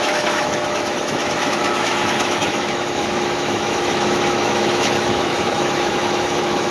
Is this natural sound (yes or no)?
no